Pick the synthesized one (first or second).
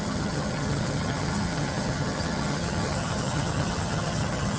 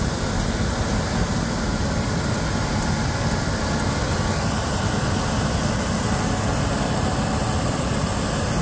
first